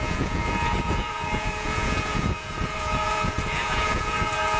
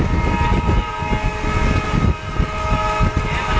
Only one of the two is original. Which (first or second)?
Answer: second